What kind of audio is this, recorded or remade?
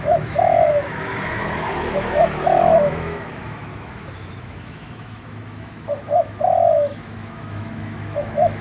remade